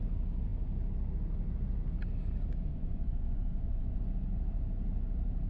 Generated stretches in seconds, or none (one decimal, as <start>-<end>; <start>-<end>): 2.7-4.0